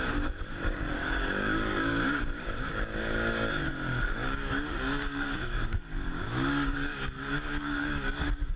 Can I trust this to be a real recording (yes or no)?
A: no